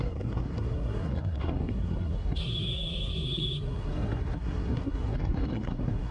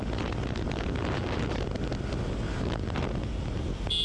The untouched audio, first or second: second